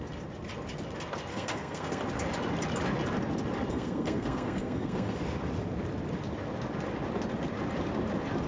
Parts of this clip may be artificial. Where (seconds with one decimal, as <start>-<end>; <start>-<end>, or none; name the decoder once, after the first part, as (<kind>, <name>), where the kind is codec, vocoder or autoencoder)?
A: 1.3-2.0 (codec, SNAC); 3.7-5.2